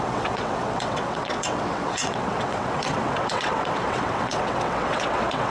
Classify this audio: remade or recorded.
remade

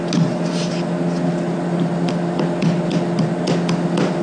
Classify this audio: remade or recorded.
recorded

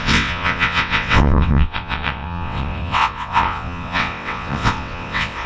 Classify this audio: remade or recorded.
remade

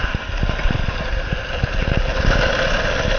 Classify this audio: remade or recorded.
recorded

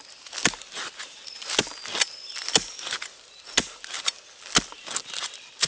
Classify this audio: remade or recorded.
recorded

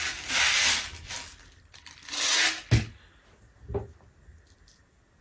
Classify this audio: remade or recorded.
recorded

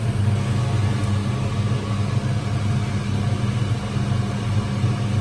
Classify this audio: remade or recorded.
recorded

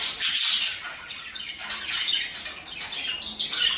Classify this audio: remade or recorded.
recorded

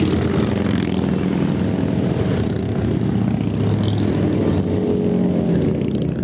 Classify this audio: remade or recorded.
recorded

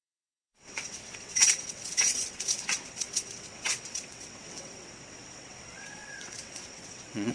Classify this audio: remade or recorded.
remade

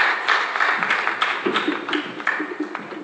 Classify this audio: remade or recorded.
recorded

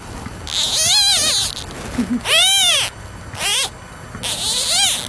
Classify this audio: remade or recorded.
recorded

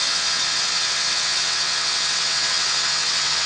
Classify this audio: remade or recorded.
remade